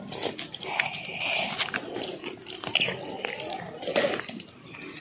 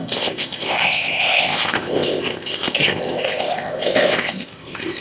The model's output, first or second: second